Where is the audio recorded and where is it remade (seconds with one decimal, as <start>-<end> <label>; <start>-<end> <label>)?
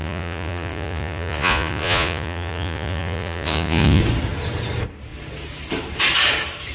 0.0-4.0 remade; 4.0-6.7 recorded